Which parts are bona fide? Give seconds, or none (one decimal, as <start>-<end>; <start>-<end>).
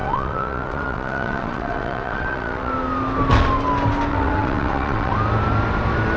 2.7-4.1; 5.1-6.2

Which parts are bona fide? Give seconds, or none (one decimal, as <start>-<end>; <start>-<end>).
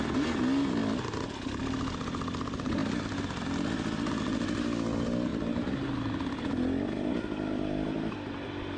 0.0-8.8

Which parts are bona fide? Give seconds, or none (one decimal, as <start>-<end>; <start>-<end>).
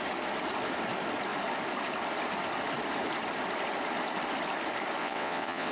0.0-5.0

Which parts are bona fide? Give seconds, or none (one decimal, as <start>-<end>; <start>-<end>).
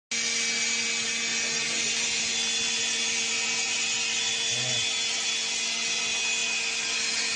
0.0-7.4